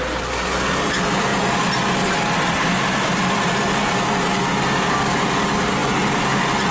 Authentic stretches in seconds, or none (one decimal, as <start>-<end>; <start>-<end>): 0.0-6.7